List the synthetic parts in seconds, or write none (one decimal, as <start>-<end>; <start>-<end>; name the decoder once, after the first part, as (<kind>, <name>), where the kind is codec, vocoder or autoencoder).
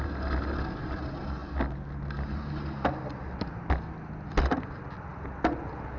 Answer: none